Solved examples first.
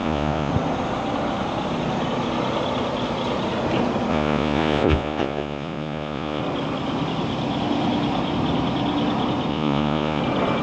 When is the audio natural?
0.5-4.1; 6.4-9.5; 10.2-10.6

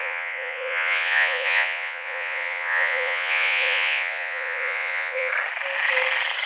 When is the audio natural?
5.3-6.5

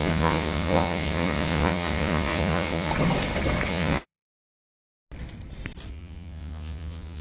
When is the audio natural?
2.9-3.7; 5.0-5.9

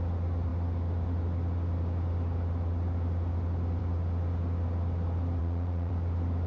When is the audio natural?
0.0-5.4; 5.9-6.5

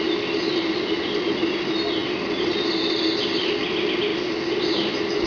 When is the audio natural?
0.0-5.3

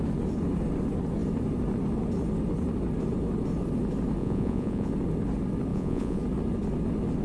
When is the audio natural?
0.0-4.2; 4.9-5.7; 6.2-7.2

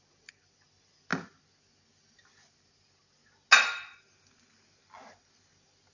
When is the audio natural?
0.0-5.9